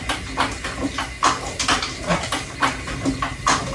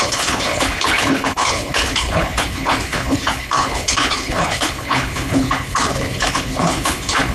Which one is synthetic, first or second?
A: second